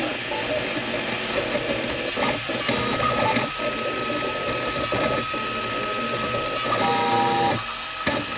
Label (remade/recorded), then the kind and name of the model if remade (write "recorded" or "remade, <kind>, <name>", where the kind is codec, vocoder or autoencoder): recorded